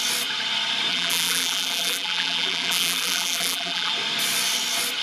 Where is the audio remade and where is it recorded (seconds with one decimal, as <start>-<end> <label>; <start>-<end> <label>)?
0.0-0.9 recorded; 0.9-3.9 remade; 3.9-5.0 recorded